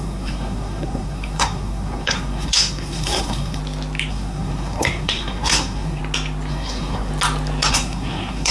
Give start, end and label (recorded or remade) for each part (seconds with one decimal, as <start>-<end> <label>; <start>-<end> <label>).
0.0-3.6 remade; 3.6-4.1 recorded; 4.1-6.0 remade; 6.0-6.5 recorded; 6.5-7.1 remade; 7.1-7.7 recorded; 7.7-8.5 remade